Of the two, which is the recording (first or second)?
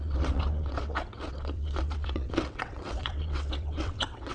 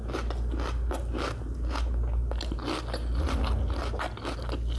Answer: second